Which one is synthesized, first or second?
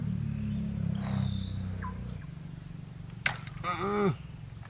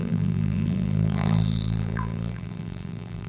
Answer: second